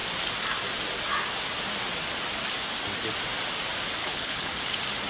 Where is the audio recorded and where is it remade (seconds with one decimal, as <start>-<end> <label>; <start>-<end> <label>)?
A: 0.0-4.0 recorded; 4.0-4.6 remade; 4.6-5.1 recorded